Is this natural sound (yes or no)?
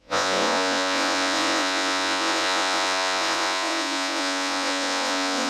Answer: no